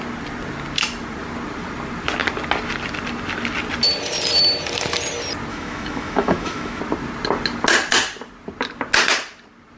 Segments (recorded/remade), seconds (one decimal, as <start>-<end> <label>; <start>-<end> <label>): 0.0-5.5 recorded; 5.5-6.8 remade; 6.8-9.8 recorded